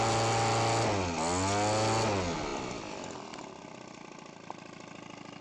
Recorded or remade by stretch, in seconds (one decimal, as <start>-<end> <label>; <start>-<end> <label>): 0.0-5.4 recorded